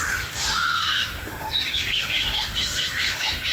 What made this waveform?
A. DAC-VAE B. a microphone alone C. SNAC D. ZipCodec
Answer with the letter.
A